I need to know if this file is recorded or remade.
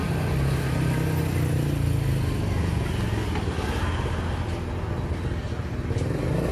recorded